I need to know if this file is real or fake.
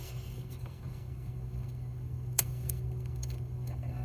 fake